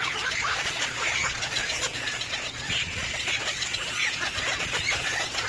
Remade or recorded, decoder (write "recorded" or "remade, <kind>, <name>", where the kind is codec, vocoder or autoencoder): remade, vocoder, Vocos